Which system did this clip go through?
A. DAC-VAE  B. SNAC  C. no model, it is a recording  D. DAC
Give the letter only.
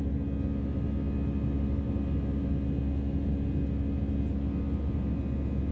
C